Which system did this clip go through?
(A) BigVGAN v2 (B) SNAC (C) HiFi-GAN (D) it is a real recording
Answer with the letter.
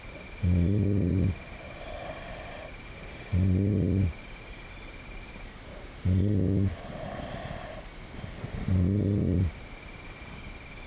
D